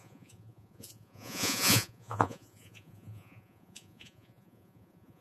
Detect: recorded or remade remade